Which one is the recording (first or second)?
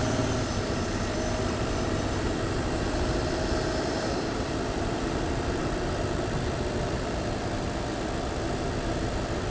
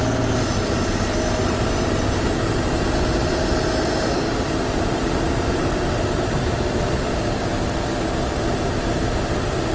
second